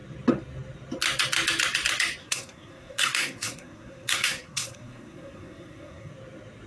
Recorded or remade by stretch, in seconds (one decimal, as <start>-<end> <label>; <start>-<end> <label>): 0.0-2.2 recorded; 2.2-6.1 remade; 6.1-6.7 recorded